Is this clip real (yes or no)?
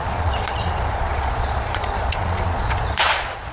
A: no